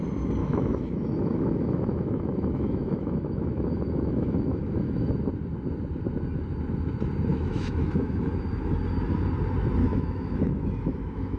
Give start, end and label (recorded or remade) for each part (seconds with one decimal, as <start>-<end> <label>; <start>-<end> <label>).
0.0-0.4 recorded; 0.4-5.1 remade; 5.1-7.3 recorded; 7.3-8.3 remade; 8.3-9.8 recorded; 9.8-11.4 remade

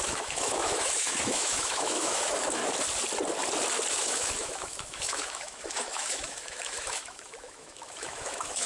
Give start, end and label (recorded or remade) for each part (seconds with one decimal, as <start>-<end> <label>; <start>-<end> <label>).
0.0-2.6 remade; 2.6-3.9 recorded; 3.9-8.7 remade

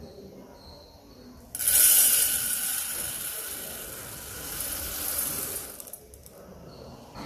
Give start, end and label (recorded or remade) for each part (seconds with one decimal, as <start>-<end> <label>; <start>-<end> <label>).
0.0-7.3 recorded

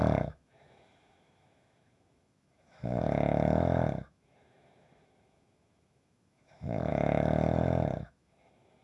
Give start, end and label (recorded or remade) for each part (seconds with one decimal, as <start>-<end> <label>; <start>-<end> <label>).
0.0-8.8 remade

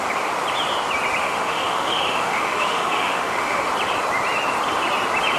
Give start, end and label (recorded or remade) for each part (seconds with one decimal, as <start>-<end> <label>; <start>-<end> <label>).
0.0-1.2 recorded; 1.2-3.7 remade; 3.7-5.4 recorded

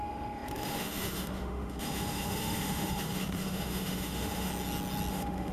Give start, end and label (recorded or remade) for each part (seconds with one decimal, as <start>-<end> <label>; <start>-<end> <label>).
0.0-4.5 remade; 4.5-5.1 recorded; 5.1-5.5 remade

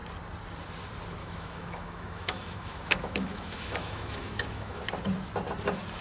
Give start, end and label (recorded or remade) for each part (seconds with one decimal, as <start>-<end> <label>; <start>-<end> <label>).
0.0-1.2 recorded; 1.2-4.8 remade; 4.8-6.0 recorded